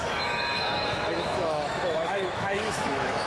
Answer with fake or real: fake